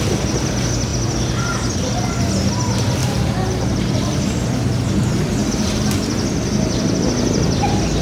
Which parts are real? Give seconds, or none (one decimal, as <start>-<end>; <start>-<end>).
0.0-3.0; 4.9-5.4; 5.9-8.0